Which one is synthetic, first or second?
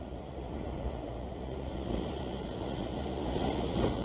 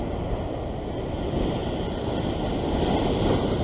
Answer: first